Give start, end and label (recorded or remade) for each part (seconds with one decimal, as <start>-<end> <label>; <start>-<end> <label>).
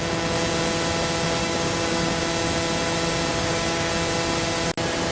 0.0-1.4 recorded; 1.4-2.2 remade; 2.2-3.3 recorded; 3.3-3.9 remade; 3.9-5.1 recorded